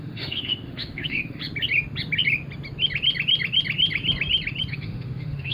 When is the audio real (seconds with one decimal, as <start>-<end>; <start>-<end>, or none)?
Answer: 1.4-4.7